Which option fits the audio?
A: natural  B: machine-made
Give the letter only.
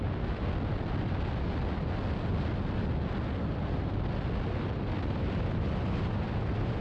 A